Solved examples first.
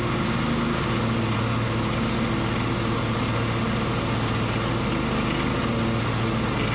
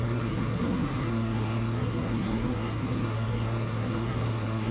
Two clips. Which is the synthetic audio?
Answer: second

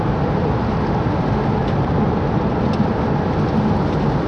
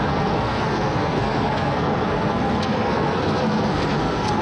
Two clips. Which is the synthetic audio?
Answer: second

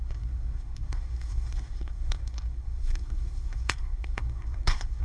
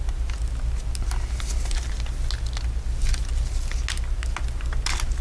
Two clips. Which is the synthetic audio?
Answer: first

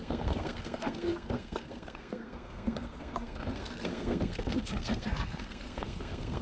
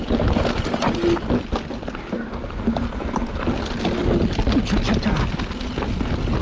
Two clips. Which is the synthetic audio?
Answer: first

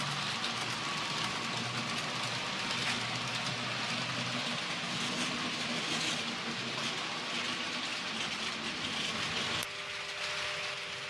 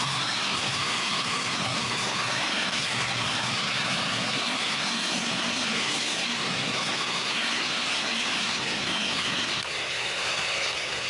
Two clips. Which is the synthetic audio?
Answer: second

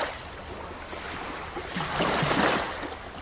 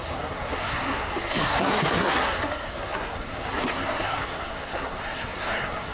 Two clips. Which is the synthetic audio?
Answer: second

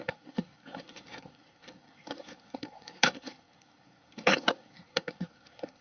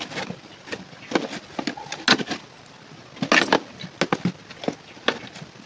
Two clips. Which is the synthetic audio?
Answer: first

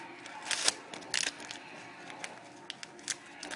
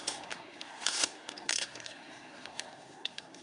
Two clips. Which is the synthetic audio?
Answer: second